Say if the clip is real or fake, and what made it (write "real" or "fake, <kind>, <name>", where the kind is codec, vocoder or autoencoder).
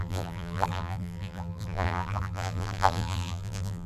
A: fake, vocoder, BigVGAN v2